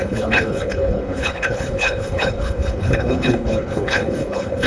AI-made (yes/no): yes